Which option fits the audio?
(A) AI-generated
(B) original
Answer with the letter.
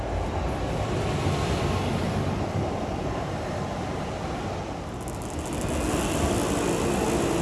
B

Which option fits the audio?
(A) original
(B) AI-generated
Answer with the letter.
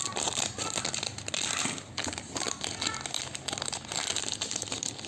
A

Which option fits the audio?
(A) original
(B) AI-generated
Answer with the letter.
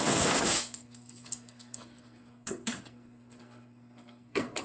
B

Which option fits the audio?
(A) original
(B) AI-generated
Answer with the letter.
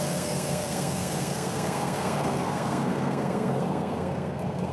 B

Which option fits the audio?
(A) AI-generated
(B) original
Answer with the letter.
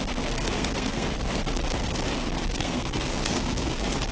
A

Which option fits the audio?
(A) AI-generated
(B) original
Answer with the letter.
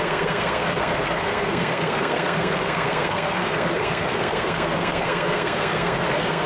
A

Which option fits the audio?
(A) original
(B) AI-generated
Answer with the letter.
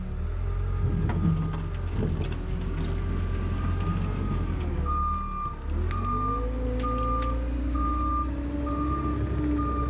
A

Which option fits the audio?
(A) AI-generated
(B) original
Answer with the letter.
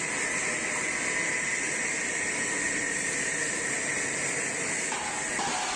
B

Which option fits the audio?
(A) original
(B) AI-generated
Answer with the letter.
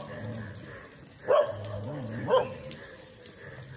A